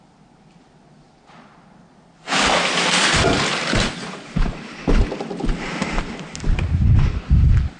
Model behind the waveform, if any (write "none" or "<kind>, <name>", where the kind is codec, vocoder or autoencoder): none